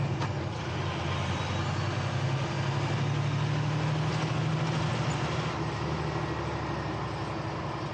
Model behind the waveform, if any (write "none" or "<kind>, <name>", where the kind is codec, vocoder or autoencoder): none